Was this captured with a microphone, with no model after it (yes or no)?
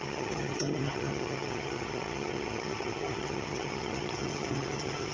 no